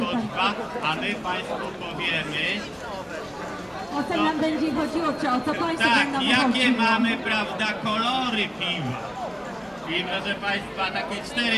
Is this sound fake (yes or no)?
no